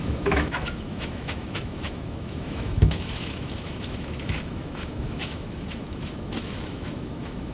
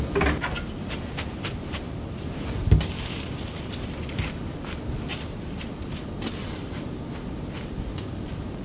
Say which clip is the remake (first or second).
first